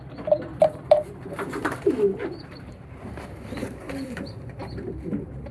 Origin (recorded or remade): remade